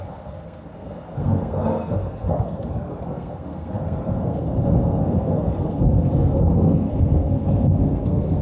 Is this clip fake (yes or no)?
yes